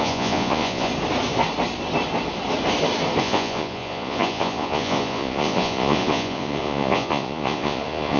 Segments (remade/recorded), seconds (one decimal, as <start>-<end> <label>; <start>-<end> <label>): 0.0-0.9 remade; 0.9-3.2 recorded; 3.2-8.2 remade